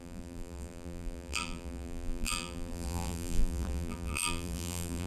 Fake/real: fake